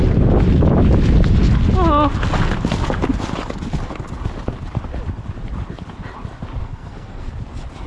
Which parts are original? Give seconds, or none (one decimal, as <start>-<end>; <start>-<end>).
0.0-6.6; 7.3-7.9